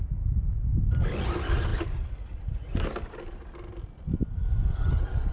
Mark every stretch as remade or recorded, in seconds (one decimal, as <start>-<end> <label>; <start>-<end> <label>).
0.0-5.3 recorded